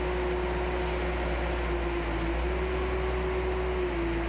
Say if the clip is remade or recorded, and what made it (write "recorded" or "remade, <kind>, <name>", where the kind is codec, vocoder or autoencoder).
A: recorded